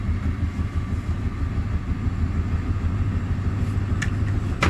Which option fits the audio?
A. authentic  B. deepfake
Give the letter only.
A